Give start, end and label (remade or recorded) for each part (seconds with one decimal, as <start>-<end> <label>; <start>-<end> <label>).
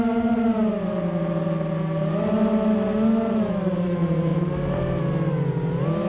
0.0-6.1 recorded